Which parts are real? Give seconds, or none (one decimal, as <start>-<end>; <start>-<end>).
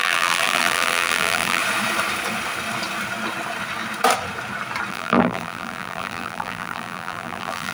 1.6-4.9